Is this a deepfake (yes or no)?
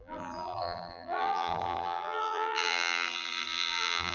yes